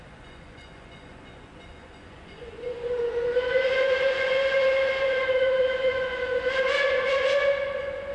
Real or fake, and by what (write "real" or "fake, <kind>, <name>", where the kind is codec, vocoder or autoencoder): fake, vocoder, Vocos